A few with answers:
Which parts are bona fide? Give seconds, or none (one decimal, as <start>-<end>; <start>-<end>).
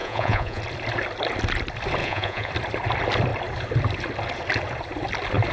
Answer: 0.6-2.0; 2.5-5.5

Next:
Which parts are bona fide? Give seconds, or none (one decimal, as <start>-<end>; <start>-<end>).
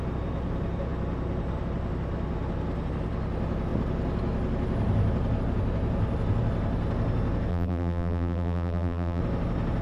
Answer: 0.0-7.5; 9.2-9.8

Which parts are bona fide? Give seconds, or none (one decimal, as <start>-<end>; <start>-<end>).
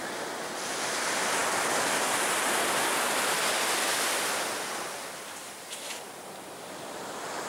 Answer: 0.0-5.4; 7.0-7.5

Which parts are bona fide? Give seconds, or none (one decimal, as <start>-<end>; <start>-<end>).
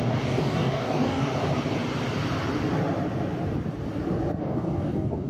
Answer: 1.3-4.4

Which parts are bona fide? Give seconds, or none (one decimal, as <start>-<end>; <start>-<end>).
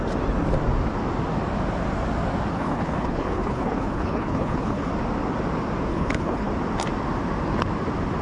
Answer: 0.0-2.5; 4.9-5.9; 6.5-8.2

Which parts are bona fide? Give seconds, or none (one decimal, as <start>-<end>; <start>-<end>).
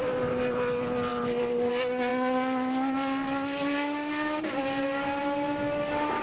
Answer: 0.0-6.2